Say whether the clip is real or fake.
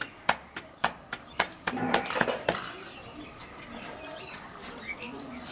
fake